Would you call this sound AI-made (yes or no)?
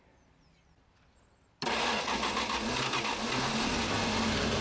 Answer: no